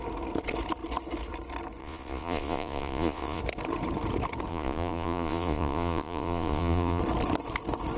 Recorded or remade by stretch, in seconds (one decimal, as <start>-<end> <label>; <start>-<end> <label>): 0.0-1.8 recorded; 1.8-3.4 remade; 3.4-4.5 recorded; 4.5-7.0 remade; 7.0-8.0 recorded